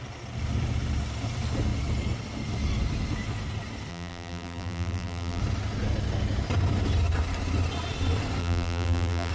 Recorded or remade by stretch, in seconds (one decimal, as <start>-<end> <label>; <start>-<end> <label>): 0.0-3.9 recorded; 3.9-5.4 remade; 5.4-8.4 recorded; 8.4-9.3 remade